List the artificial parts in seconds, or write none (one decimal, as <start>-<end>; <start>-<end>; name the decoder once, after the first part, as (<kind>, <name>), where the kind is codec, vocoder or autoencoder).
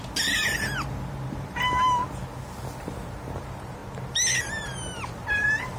0.9-2.0 (vocoder, BigVGAN v2); 2.8-3.8; 4.4-5.8